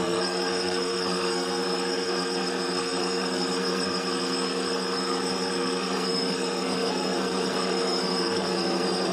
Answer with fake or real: fake